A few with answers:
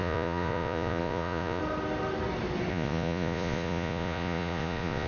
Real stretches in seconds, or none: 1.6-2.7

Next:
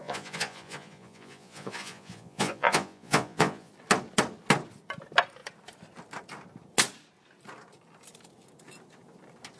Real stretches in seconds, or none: 3.7-9.6

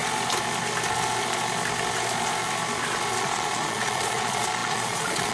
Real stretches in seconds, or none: 0.0-3.2

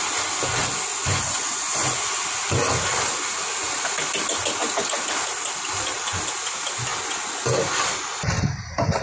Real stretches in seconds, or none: 0.0-0.9; 2.2-9.0

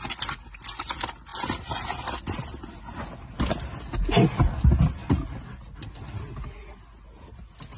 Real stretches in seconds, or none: 0.0-7.8

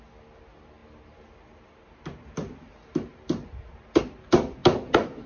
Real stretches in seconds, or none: 0.0-5.3

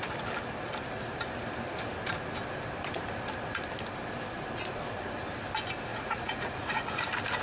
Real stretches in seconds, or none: 0.0-5.9; 7.0-7.4

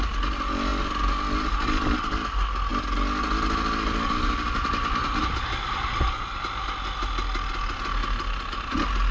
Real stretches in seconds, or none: 0.0-9.1